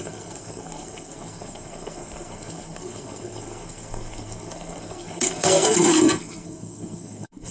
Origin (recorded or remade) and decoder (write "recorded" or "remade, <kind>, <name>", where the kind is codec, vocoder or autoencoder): remade, codec, SNAC